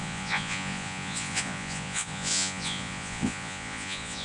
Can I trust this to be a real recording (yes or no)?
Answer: no